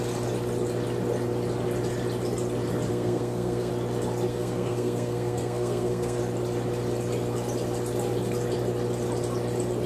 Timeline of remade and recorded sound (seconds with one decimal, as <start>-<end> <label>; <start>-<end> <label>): 0.0-2.9 recorded; 2.9-3.7 remade; 3.7-4.3 recorded; 4.3-6.2 remade; 6.2-9.9 recorded